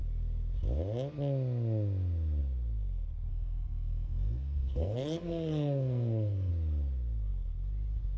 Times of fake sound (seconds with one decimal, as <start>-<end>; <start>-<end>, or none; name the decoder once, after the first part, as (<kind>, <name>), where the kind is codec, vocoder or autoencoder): 3.3-6.5 (codec, SNAC)